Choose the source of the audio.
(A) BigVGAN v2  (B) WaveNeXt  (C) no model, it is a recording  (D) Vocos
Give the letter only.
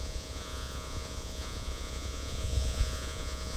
D